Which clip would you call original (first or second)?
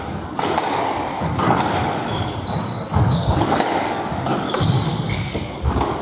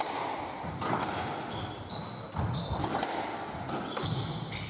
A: second